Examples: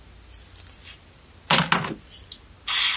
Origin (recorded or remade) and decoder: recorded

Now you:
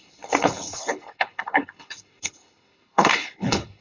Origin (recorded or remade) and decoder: remade, codec, HILCodec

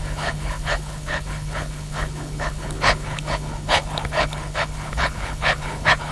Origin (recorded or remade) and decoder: remade, codec, HILCodec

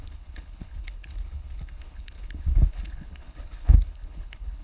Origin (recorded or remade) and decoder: remade, codec, HILCodec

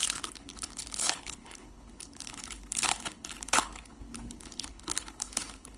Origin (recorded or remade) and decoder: remade, codec, HILCodec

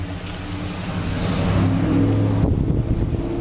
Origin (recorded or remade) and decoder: recorded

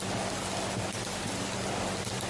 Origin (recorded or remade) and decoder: recorded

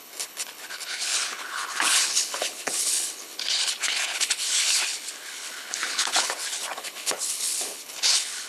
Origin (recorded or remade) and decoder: remade, codec, HILCodec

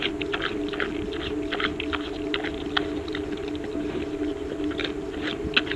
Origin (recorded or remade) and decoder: recorded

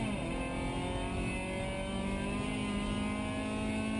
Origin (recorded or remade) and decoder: recorded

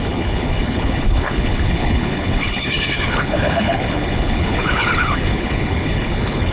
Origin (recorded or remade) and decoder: remade, codec, HILCodec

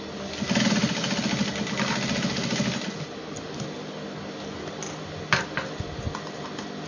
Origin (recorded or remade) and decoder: recorded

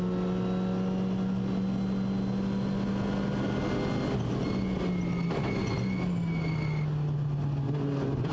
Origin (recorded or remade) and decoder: recorded